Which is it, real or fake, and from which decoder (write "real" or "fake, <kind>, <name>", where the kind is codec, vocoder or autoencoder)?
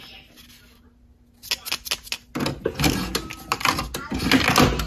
real